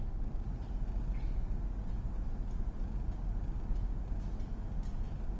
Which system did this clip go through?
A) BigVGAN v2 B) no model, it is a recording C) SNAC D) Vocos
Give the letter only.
B